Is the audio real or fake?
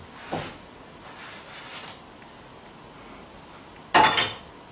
real